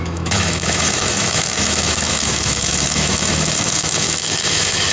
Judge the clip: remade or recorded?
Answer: remade